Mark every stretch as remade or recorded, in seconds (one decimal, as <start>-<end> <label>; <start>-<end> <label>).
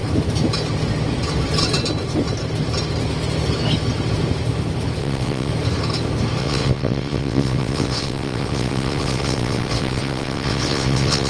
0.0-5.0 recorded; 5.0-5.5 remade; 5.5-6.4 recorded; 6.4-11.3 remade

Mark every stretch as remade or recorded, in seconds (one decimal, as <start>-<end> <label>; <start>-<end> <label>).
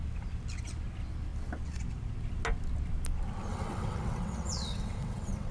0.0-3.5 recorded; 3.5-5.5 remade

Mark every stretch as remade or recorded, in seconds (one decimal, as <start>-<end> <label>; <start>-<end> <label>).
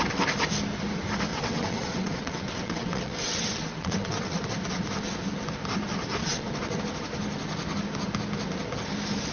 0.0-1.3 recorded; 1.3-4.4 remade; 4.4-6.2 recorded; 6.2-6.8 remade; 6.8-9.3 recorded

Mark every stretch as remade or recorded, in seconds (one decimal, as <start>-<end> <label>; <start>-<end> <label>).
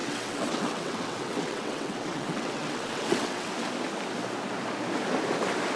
0.0-3.5 remade; 3.5-5.8 recorded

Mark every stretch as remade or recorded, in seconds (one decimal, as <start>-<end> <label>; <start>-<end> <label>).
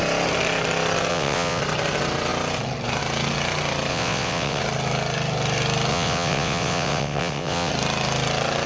0.0-1.1 recorded; 1.1-1.6 remade; 1.6-3.9 recorded; 3.9-4.6 remade; 4.6-5.9 recorded; 5.9-7.7 remade; 7.7-8.7 recorded